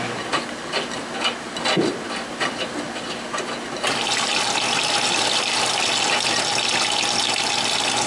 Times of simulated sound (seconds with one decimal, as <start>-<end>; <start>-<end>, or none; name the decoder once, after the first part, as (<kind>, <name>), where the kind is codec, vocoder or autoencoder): 4.3-5.5 (vocoder, BigVGAN v2)